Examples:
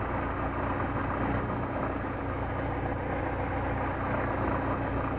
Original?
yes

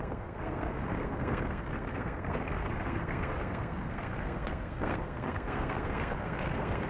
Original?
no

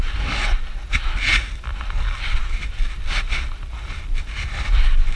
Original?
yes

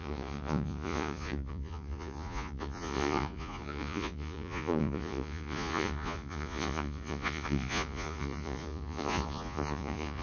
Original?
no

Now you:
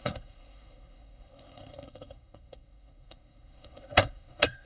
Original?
no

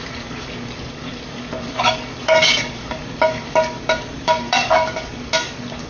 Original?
no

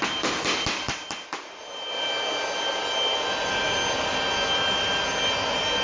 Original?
yes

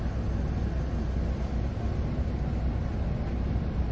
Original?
yes